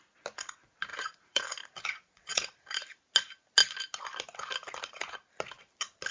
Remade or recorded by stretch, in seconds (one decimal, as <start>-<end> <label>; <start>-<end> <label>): 0.0-0.9 recorded; 0.9-1.4 remade; 1.4-1.9 recorded; 1.9-2.5 remade; 2.5-6.1 recorded